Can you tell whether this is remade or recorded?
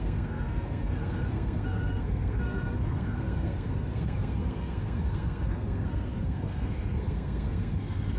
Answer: remade